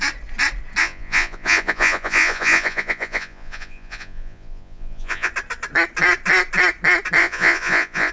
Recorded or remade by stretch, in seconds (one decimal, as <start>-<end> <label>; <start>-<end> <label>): 0.0-0.8 recorded; 0.8-5.3 remade; 5.3-7.2 recorded; 7.2-8.1 remade